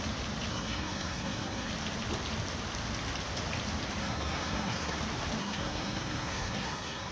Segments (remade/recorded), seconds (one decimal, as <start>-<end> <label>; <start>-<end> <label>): 0.0-0.5 recorded; 0.5-1.7 remade; 1.7-4.0 recorded; 4.0-5.0 remade; 5.0-5.4 recorded; 5.4-7.1 remade